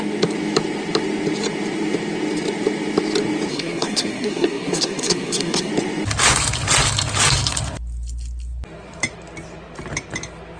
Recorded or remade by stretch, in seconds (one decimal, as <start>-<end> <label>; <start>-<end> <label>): 0.0-3.5 recorded; 3.5-5.7 remade; 5.7-10.6 recorded

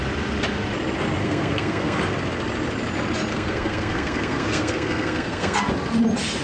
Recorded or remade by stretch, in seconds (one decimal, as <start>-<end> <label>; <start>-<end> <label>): 0.0-1.2 recorded; 1.2-2.0 remade; 2.0-3.3 recorded; 3.3-5.6 remade; 5.6-6.4 recorded

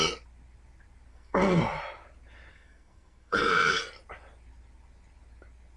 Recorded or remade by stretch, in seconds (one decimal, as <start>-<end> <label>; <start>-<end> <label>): 0.0-1.1 recorded; 1.1-1.6 remade; 1.6-2.5 recorded; 2.5-3.8 remade; 3.8-5.8 recorded

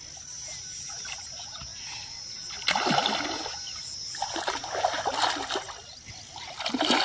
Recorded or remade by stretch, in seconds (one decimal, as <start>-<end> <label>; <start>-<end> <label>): 0.0-7.0 recorded

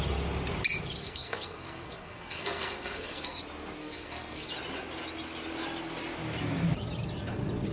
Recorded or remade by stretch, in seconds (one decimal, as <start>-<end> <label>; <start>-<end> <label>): 0.0-1.0 recorded; 1.0-3.4 remade; 3.4-3.8 recorded; 3.8-4.5 remade; 4.5-7.7 recorded